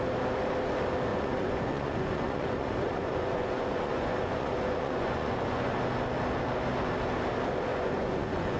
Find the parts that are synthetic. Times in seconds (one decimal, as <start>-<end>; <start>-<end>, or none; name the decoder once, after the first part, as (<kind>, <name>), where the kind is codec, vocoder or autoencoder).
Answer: 1.1-5.7 (vocoder, Vocos); 7.7-8.6